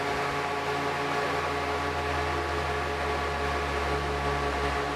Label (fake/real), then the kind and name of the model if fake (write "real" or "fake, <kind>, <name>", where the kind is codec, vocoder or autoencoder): real